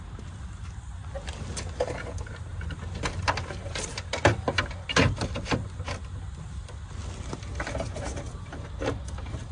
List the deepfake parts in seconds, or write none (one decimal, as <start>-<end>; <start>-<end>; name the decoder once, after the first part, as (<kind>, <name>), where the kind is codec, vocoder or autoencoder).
2.5-4.5 (vocoder, BigVGAN v2)